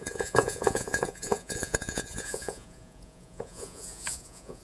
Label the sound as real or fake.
fake